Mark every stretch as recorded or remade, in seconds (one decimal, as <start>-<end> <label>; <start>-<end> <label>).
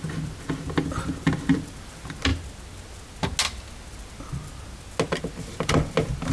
0.0-6.3 recorded